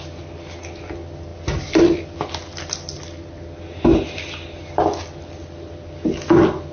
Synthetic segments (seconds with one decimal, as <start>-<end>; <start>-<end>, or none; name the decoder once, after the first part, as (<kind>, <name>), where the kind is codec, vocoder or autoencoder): none